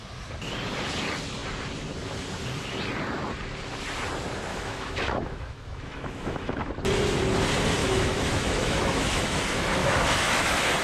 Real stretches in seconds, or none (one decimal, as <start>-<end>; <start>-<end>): 0.0-4.5; 6.7-7.8; 9.4-9.8